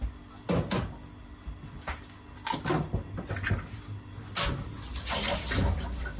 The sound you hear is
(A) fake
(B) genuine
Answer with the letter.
B